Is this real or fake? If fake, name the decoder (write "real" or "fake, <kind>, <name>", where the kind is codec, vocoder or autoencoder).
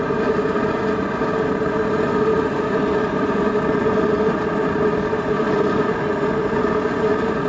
real